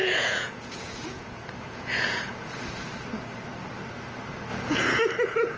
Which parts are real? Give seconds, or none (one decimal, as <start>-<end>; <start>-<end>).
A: 2.6-4.5; 5.0-5.6